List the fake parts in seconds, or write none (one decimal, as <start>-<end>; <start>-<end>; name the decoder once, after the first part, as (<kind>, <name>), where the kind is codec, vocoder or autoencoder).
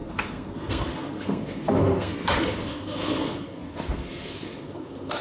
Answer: 0.0-5.2 (codec, SNAC)